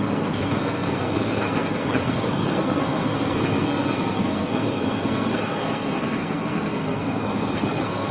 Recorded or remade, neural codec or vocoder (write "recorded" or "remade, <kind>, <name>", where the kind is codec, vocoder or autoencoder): remade, codec, SNAC